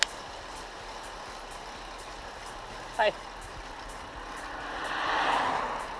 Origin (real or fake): real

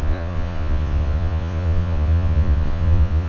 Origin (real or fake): fake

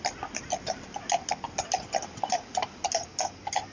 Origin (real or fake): real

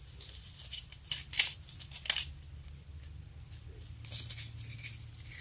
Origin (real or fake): real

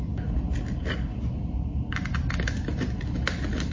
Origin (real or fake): real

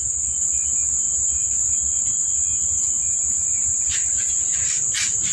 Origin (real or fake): real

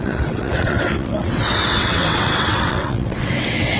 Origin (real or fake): fake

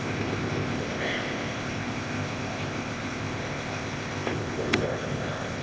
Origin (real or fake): fake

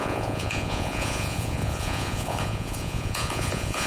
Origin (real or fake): fake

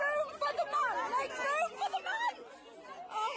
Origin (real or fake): real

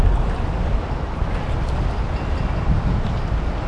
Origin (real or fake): real